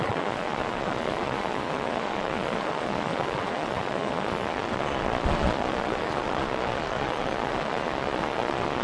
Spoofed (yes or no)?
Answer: yes